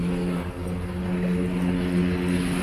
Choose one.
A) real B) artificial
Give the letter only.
A